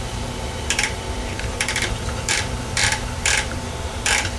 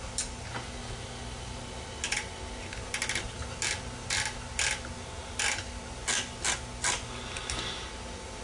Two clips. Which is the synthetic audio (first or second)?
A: first